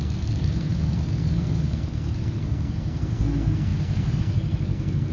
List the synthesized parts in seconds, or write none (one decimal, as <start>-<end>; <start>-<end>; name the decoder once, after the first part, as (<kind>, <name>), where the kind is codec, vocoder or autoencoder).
0.0-5.1 (codec, SNAC)